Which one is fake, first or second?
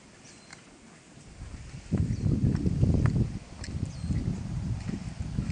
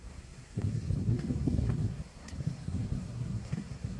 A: second